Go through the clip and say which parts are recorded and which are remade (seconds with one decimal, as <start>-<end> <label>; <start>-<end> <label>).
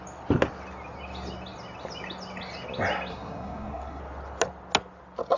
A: 0.0-3.1 recorded; 3.1-4.0 remade; 4.0-5.4 recorded